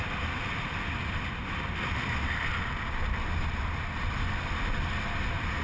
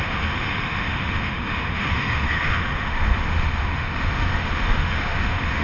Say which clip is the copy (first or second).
second